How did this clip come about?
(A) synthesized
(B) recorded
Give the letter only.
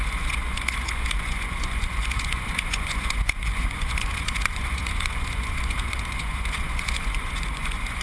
A